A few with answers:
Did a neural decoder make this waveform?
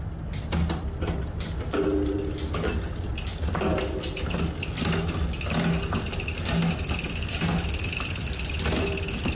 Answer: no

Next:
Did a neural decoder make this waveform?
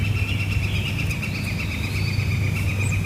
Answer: no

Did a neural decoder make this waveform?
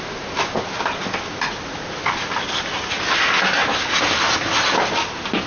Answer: no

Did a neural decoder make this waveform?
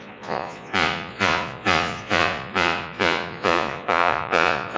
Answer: yes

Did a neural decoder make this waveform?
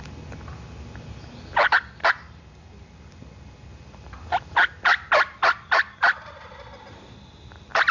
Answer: no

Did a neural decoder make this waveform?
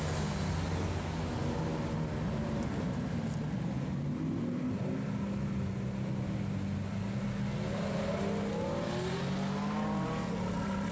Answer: no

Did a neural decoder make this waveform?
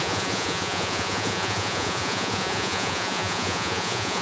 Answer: yes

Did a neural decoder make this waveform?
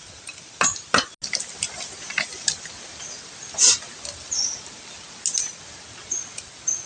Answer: no